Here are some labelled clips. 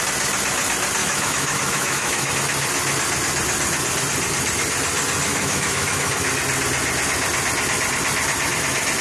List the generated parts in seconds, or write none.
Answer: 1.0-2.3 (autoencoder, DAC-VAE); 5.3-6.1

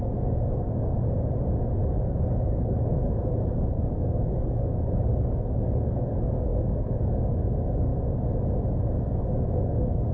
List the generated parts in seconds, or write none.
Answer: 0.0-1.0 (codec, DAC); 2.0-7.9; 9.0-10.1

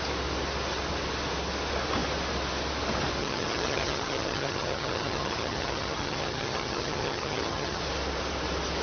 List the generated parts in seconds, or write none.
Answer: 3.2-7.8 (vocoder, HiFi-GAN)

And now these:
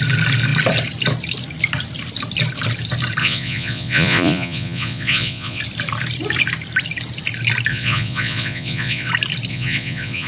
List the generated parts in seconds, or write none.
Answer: 3.2-5.6 (vocoder, Vocos); 7.7-9.1; 9.5-10.3

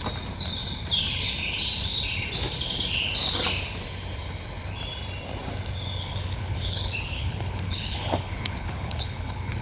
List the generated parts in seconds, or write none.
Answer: 6.0-9.6 (codec, HILCodec)